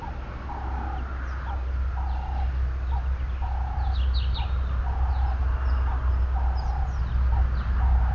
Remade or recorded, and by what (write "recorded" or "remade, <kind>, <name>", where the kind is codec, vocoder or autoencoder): recorded